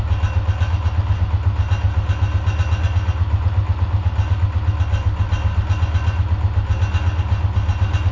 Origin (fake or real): real